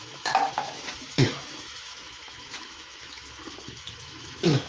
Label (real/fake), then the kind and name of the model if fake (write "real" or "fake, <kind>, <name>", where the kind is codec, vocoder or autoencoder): fake, autoencoder, DAC-VAE